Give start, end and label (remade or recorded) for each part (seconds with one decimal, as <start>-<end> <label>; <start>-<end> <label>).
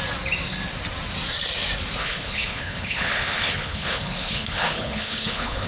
0.0-2.0 recorded; 2.0-5.7 remade